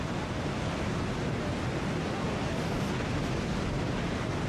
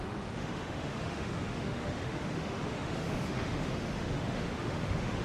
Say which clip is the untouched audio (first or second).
first